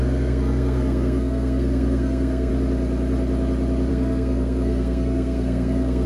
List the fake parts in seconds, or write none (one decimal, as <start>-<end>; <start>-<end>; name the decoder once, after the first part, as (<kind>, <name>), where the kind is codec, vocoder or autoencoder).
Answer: 0.0-2.5 (codec, SNAC); 3.9-6.1